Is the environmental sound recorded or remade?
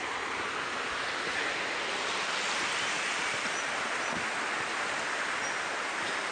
recorded